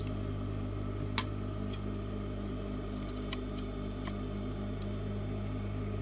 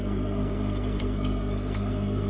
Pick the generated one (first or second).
second